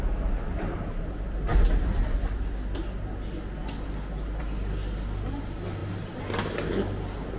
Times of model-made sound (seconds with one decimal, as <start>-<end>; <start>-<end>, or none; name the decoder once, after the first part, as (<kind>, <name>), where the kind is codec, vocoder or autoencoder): none